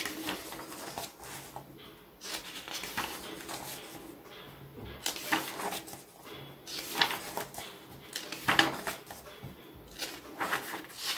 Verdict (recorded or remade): recorded